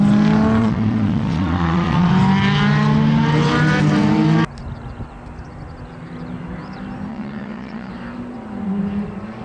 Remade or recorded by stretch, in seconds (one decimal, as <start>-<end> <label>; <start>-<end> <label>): 0.0-0.6 recorded; 0.6-2.1 remade; 2.1-7.1 recorded; 7.1-7.9 remade; 7.9-9.4 recorded